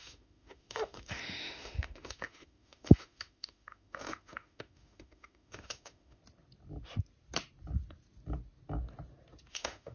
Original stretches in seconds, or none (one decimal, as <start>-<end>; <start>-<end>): 6.2-9.5

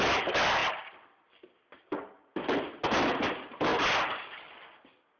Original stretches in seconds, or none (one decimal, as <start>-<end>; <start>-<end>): 0.0-5.2